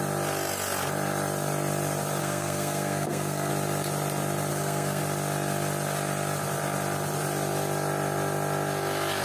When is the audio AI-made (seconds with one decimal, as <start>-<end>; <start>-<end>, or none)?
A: 2.2-3.5; 4.5-5.0